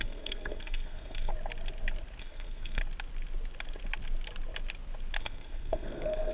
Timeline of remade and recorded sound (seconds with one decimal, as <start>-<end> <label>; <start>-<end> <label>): 0.0-1.3 remade; 1.3-2.2 recorded; 2.2-2.8 remade; 2.8-5.2 recorded; 5.2-6.3 remade